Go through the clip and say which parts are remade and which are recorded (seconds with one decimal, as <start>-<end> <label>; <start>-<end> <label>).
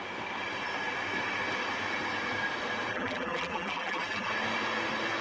0.0-2.9 recorded; 2.9-4.3 remade; 4.3-5.2 recorded